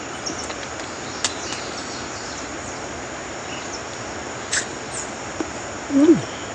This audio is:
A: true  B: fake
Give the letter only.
A